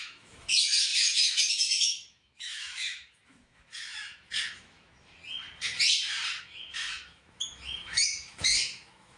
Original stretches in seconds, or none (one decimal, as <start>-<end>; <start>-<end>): 5.2-6.4